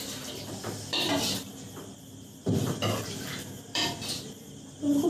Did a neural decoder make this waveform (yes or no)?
yes